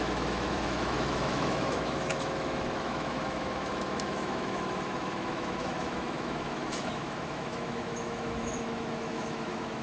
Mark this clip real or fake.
fake